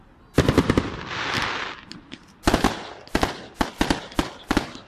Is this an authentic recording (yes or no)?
yes